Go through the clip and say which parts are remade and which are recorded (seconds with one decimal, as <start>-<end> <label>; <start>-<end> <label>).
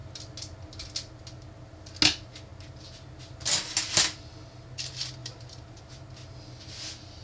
0.0-5.2 recorded; 5.2-5.8 remade; 5.8-7.2 recorded